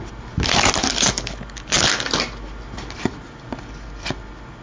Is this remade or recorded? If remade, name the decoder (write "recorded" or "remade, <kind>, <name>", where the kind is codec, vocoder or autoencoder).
recorded